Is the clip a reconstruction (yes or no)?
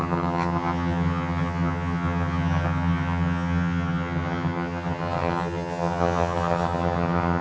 yes